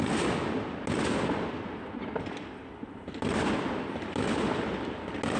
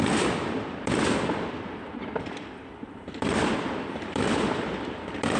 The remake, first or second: second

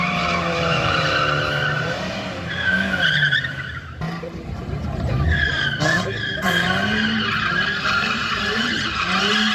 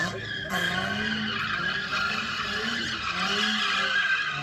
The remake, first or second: first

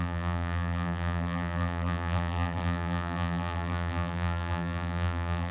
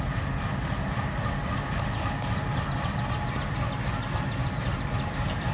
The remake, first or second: first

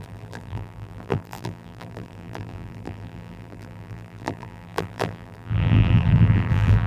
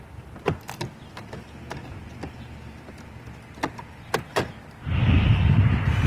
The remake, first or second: first